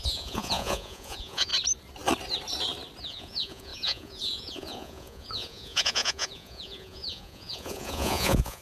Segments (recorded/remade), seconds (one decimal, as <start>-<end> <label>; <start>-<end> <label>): 0.0-1.5 remade; 1.5-3.0 recorded; 3.0-8.6 remade